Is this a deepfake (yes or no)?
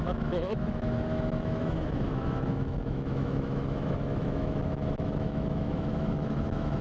yes